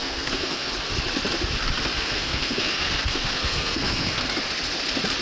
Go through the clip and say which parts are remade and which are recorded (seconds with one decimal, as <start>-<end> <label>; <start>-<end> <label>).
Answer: 0.0-0.7 remade; 0.7-1.9 recorded; 1.9-4.2 remade; 4.2-5.2 recorded